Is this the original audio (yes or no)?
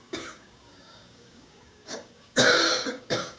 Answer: no